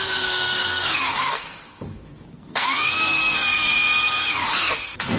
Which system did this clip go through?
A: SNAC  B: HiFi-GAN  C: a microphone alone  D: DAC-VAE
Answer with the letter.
A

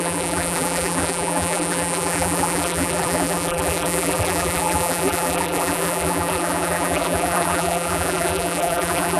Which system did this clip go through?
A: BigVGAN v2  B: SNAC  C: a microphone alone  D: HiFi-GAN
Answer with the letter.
A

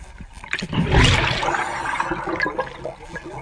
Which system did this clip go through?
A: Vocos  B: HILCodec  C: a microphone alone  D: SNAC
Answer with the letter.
C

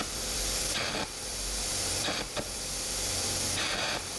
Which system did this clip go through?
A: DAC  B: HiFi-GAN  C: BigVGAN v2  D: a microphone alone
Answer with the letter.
C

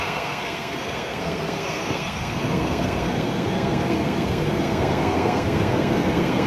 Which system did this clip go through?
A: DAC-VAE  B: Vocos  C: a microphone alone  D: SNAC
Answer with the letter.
D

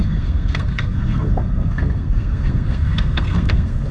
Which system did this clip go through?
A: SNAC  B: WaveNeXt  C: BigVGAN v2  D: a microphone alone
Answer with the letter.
A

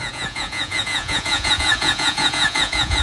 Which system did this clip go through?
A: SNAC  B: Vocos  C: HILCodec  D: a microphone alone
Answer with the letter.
B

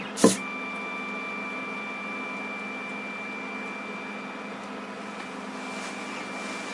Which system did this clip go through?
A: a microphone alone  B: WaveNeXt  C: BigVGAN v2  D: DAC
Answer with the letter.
A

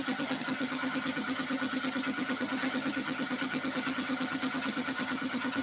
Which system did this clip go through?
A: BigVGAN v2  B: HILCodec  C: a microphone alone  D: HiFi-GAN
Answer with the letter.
D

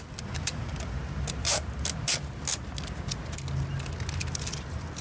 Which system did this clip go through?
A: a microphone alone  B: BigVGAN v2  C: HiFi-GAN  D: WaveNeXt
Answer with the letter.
A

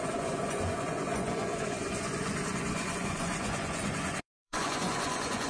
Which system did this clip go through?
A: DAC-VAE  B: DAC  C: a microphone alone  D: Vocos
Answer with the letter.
D